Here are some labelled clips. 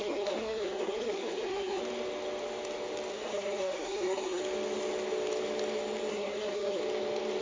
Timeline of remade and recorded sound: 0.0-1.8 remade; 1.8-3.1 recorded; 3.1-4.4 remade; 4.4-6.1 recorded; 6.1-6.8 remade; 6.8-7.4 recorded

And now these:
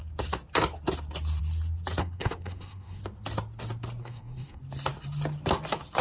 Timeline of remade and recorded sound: 0.0-2.0 recorded; 2.0-3.0 remade; 3.0-4.0 recorded; 4.0-4.6 remade; 4.6-6.0 recorded

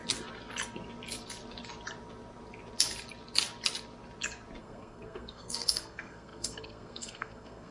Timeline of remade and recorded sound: 0.0-4.6 recorded; 4.6-7.7 remade